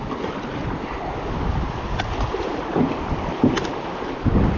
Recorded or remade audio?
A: recorded